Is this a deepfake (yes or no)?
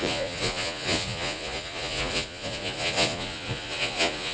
yes